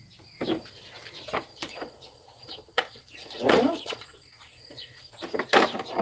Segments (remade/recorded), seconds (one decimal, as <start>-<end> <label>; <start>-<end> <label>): 0.0-1.5 recorded; 1.5-5.1 remade; 5.1-6.0 recorded